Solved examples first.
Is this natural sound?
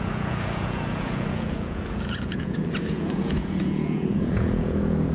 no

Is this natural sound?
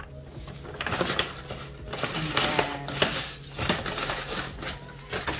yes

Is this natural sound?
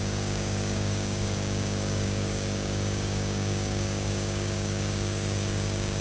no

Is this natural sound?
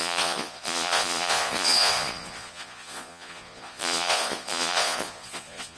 no